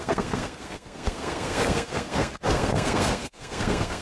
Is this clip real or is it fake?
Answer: fake